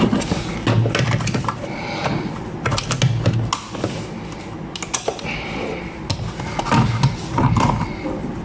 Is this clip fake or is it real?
real